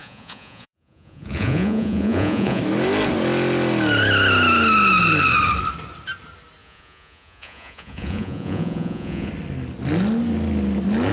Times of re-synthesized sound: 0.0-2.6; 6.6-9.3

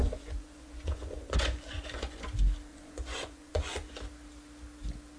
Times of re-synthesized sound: 0.0-2.2; 2.7-3.9

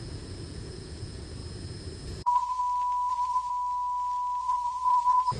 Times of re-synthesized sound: 0.0-1.4; 2.1-2.6; 3.1-3.5; 4.4-5.4

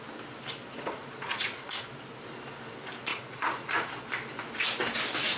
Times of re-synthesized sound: 0.7-1.9; 3.1-3.9

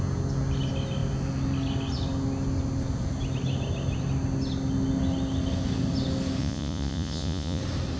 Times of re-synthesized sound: 6.4-7.6